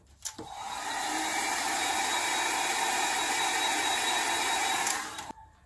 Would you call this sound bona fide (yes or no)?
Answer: no